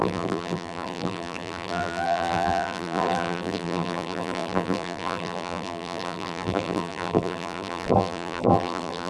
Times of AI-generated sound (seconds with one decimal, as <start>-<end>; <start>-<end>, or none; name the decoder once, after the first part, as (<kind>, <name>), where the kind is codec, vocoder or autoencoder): 0.0-9.1 (vocoder, BigVGAN v2)

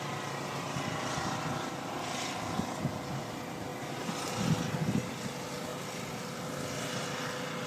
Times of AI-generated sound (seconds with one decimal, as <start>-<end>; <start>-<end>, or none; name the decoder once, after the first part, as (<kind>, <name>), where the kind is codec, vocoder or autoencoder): none

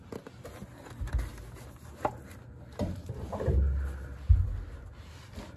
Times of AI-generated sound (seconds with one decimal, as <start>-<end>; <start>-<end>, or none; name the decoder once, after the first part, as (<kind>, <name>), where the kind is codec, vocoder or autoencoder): none

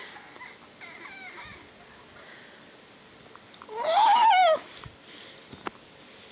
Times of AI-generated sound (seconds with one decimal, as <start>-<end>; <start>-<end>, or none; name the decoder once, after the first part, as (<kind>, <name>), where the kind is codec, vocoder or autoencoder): none

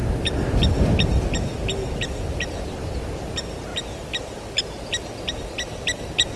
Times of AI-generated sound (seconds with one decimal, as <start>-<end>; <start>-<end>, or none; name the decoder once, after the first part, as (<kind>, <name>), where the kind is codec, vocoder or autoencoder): none

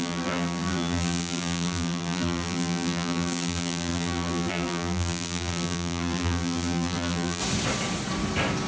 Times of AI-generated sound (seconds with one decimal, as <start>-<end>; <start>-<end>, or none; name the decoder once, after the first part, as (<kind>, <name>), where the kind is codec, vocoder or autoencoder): 0.0-7.4 (vocoder, BigVGAN v2)

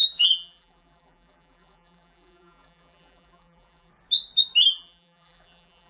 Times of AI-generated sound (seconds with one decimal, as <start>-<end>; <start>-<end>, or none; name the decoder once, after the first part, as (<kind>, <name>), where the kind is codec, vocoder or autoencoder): 0.0-3.9 (vocoder, BigVGAN v2); 4.7-5.9

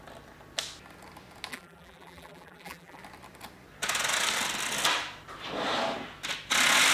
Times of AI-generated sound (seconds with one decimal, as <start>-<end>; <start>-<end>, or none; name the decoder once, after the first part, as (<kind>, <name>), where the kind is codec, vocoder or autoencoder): 1.5-3.0 (vocoder, BigVGAN v2)